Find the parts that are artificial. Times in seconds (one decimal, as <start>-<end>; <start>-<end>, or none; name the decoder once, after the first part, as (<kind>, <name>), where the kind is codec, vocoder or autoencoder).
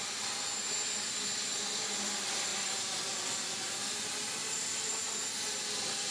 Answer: none